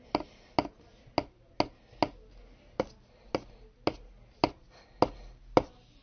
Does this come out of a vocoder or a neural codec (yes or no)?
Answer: no